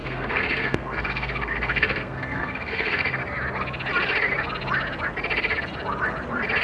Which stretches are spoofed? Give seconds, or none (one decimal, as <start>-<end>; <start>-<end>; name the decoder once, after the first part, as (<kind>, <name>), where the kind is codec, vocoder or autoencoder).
0.0-3.2 (codec, SNAC)